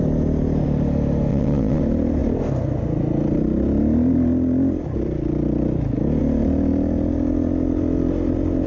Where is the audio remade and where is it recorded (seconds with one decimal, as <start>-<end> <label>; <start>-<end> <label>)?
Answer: 0.0-1.3 recorded; 1.3-1.8 remade; 1.8-8.7 recorded